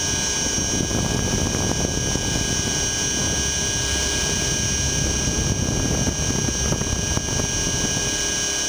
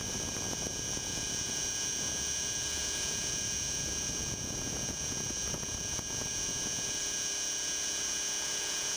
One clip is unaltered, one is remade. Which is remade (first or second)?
second